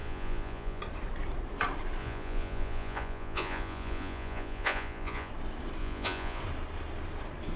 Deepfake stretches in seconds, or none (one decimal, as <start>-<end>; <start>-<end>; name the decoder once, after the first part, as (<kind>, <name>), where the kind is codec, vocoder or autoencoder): 0.0-0.8 (vocoder, Vocos); 2.0-5.3; 5.8-6.4